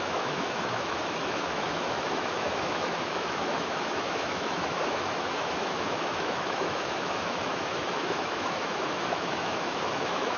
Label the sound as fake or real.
fake